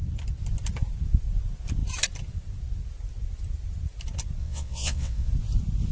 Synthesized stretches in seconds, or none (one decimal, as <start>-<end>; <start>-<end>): 4.4-5.3